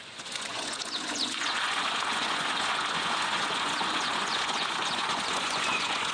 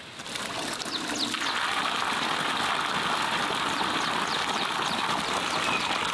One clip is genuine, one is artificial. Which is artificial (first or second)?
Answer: first